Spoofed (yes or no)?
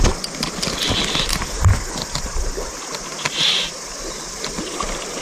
no